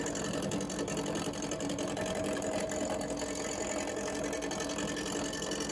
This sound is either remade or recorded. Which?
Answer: recorded